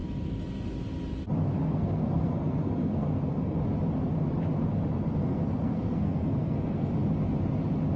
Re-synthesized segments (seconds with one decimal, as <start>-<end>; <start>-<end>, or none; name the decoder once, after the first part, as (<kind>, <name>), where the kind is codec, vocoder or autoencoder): 1.4-3.6 (codec, SNAC); 5.2-6.9